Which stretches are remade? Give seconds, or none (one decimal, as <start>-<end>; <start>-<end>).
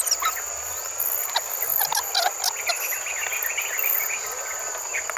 none